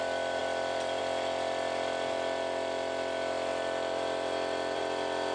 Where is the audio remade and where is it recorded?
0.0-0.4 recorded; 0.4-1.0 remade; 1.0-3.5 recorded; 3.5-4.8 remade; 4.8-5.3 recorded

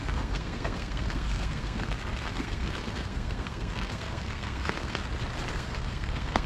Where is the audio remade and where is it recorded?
0.0-5.0 remade; 5.0-5.5 recorded; 5.5-6.5 remade